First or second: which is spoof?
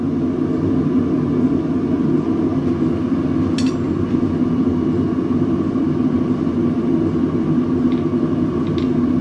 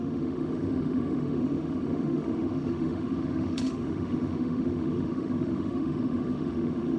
second